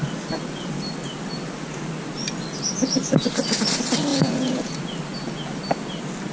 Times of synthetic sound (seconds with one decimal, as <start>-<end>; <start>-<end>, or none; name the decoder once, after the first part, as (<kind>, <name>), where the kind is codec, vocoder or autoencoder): 4.1-4.8 (vocoder, Vocos)